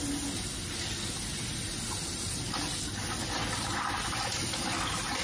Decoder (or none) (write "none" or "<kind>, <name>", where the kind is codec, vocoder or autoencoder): none